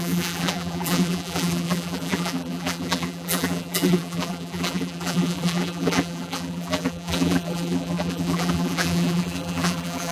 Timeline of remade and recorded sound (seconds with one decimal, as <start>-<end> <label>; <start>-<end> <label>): 0.0-10.1 remade

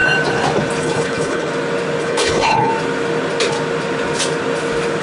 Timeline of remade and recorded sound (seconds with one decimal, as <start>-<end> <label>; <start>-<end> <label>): 0.0-0.8 recorded; 0.8-1.5 remade; 1.5-2.0 recorded; 2.0-2.7 remade; 2.7-5.0 recorded

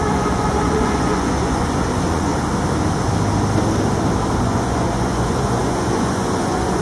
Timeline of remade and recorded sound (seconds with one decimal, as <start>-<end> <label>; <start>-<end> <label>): 0.0-2.3 remade; 2.3-4.4 recorded; 4.4-6.8 remade

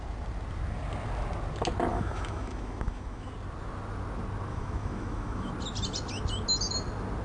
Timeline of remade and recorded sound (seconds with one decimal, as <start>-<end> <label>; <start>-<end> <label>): 0.0-1.9 recorded; 1.9-3.3 remade; 3.3-4.5 recorded; 4.5-5.5 remade; 5.5-7.2 recorded

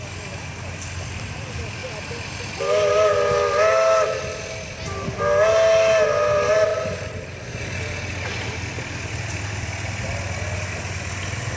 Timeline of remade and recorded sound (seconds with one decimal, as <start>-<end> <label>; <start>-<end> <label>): 0.0-6.7 recorded; 6.7-7.6 remade; 7.6-11.6 recorded